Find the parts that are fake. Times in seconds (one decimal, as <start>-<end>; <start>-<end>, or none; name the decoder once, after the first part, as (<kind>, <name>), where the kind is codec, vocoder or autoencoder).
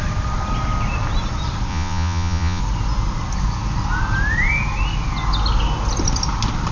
1.7-2.6 (vocoder, Vocos)